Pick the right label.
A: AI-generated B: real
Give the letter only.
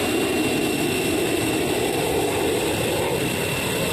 B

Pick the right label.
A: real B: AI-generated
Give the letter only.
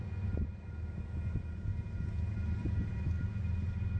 A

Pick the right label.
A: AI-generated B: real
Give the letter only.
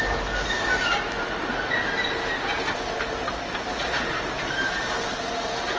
B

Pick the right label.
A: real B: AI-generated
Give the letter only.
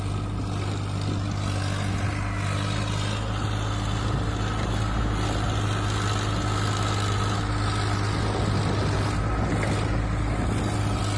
A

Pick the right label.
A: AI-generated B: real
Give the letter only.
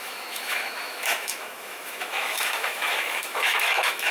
A